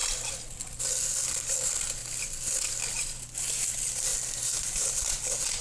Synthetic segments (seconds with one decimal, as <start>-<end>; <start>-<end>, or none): 4.1-5.1